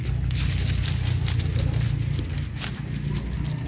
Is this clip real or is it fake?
real